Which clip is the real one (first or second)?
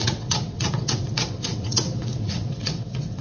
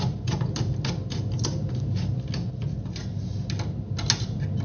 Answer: second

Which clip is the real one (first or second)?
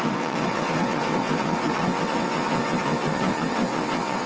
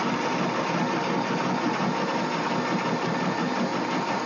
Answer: second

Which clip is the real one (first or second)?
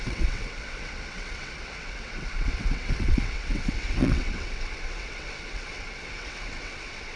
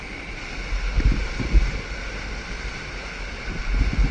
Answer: second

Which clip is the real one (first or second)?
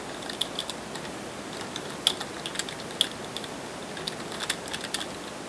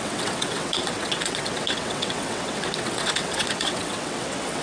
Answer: first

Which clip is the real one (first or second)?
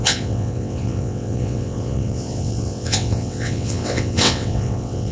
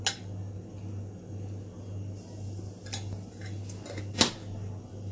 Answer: second